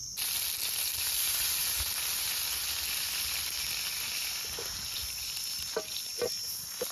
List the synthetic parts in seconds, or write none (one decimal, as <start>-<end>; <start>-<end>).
none